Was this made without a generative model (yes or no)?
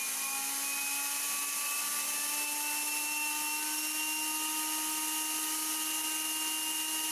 yes